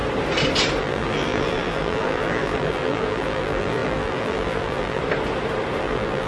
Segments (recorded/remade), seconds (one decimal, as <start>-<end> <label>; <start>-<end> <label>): 0.0-0.8 recorded; 0.8-5.0 remade; 5.0-5.8 recorded; 5.8-6.3 remade